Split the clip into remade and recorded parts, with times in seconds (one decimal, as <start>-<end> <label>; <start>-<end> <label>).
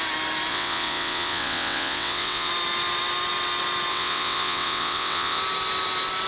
0.0-0.5 recorded; 0.5-2.5 remade; 2.5-3.9 recorded; 3.9-5.4 remade; 5.4-6.3 recorded